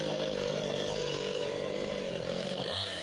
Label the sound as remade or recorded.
remade